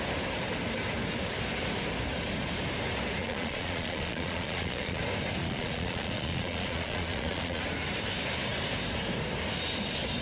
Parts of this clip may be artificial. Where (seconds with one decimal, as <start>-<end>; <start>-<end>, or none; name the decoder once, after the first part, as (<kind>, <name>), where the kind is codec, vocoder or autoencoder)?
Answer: 3.2-5.0 (vocoder, Vocos); 5.4-7.6